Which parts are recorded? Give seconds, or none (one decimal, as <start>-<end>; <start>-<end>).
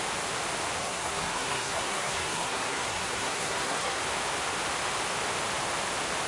0.0-0.8; 4.0-6.3